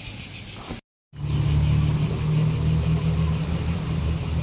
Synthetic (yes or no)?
no